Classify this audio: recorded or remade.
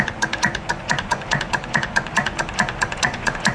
remade